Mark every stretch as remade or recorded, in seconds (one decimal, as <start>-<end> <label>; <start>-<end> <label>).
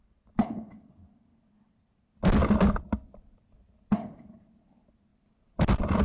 0.0-1.3 recorded; 1.3-4.6 remade; 4.6-5.1 recorded; 5.1-6.0 remade